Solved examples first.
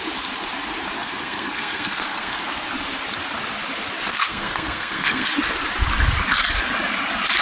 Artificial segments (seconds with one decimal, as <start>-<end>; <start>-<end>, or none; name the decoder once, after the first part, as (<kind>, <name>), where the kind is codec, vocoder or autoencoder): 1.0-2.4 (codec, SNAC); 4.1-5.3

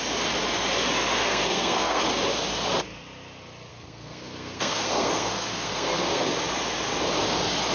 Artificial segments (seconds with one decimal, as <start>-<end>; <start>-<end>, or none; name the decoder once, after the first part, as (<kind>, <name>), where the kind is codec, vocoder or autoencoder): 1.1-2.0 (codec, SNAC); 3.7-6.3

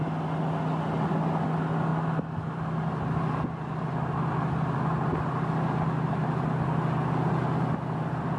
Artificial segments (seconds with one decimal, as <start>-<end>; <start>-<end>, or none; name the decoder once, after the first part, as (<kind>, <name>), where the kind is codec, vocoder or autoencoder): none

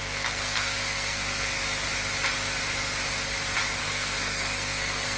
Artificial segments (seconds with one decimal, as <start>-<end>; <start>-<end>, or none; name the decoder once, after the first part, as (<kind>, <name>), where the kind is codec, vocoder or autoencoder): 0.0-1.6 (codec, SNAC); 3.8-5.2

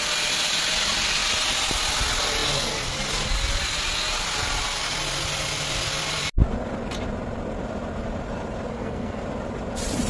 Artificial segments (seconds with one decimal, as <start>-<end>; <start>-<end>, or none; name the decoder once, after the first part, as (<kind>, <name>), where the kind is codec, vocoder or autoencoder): 8.7-9.2 (codec, SNAC)

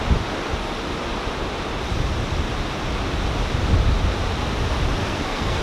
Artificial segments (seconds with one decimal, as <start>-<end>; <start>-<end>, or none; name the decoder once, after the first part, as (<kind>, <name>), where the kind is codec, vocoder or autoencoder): 5.0-5.6 (codec, SNAC)

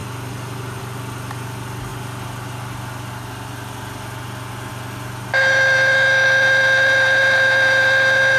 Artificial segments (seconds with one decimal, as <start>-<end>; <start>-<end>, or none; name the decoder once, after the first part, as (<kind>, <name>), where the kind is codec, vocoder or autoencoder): none